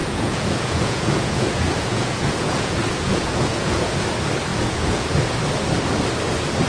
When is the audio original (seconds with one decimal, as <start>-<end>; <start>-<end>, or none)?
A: 4.0-4.5; 5.2-6.7